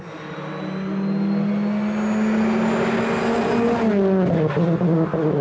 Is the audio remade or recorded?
recorded